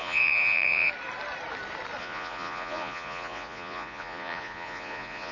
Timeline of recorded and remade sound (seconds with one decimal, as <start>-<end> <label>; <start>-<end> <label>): 0.0-0.9 remade; 0.9-2.0 recorded; 2.0-5.3 remade